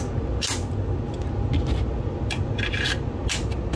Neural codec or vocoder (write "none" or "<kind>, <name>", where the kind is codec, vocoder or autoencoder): none